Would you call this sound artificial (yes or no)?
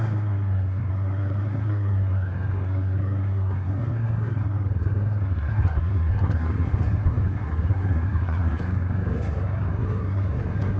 yes